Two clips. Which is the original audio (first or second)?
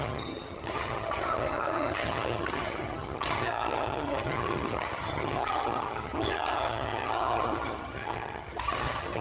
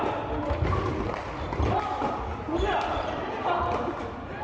second